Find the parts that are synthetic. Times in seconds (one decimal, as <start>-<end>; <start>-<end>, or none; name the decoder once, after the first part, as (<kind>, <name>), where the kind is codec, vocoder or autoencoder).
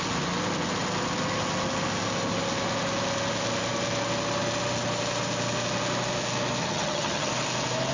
6.6-7.3 (vocoder, HiFi-GAN)